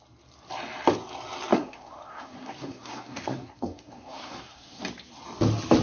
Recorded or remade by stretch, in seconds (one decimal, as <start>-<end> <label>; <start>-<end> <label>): 0.0-1.5 recorded; 1.5-4.8 remade; 4.8-5.8 recorded